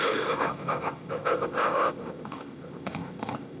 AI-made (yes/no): yes